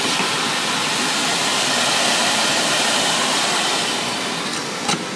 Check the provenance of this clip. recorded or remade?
recorded